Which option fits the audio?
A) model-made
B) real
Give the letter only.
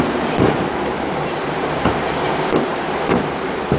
A